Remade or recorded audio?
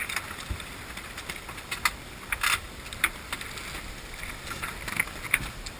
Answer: recorded